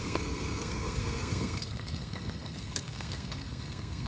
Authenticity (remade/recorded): remade